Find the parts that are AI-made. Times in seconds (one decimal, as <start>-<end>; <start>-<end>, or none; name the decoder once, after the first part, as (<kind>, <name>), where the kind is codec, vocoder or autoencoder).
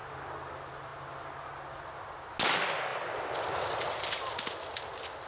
none